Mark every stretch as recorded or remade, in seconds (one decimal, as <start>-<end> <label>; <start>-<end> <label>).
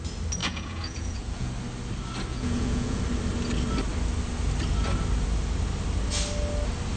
0.0-0.4 recorded; 0.4-1.5 remade; 1.5-2.3 recorded; 2.3-3.0 remade; 3.0-7.0 recorded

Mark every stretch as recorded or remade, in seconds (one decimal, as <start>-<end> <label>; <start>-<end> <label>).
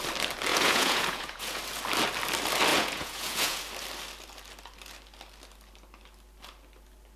0.0-0.5 recorded; 0.5-1.6 remade; 1.6-2.7 recorded; 2.7-3.6 remade; 3.6-7.2 recorded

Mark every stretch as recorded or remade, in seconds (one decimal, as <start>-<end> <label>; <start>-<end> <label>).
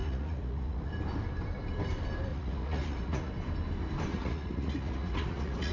0.0-0.9 remade; 0.9-2.3 recorded; 2.3-3.3 remade; 3.3-4.1 recorded; 4.1-5.7 remade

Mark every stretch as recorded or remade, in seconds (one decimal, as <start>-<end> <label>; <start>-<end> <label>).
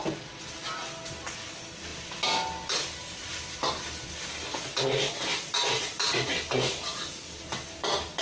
0.0-8.2 recorded